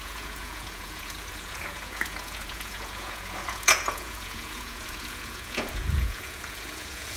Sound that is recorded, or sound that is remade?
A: remade